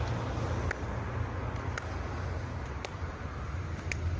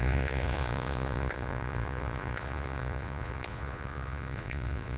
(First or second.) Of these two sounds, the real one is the first